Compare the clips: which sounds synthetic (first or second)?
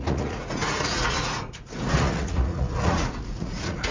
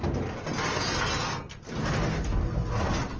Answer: first